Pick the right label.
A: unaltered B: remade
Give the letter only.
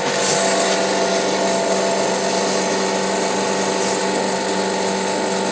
A